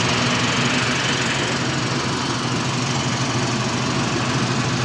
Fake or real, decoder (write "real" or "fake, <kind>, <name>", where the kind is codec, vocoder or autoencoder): real